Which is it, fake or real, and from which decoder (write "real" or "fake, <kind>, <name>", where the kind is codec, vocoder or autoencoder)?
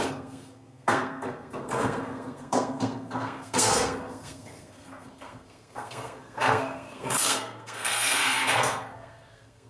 fake, codec, SNAC